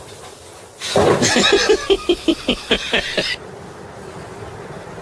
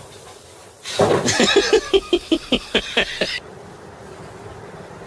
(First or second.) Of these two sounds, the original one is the first